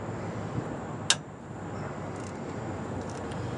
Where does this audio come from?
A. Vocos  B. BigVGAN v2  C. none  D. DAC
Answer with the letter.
C